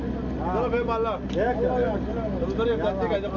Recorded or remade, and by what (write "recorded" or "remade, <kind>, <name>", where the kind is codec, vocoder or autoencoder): recorded